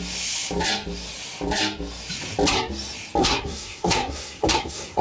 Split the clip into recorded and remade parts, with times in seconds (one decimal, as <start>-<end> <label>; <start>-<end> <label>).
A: 0.0-3.2 recorded; 3.2-5.0 remade